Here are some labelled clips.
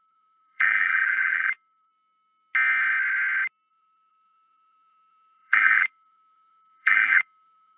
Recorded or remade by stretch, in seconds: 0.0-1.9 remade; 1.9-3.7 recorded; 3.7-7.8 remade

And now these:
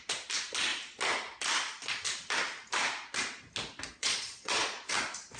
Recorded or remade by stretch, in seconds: 0.0-3.9 recorded; 3.9-4.9 remade; 4.9-5.4 recorded

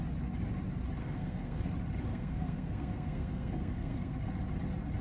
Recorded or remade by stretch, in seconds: 0.0-1.0 recorded; 1.0-1.7 remade; 1.7-2.1 recorded; 2.1-4.3 remade; 4.3-5.0 recorded

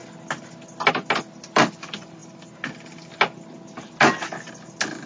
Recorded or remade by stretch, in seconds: 0.0-5.1 recorded

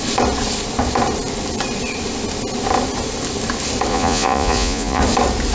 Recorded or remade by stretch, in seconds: 0.0-3.9 recorded; 3.9-5.0 remade; 5.0-5.5 recorded

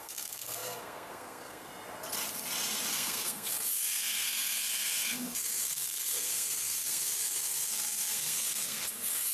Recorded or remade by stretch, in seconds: 0.0-1.7 remade; 1.7-2.9 recorded; 2.9-9.3 remade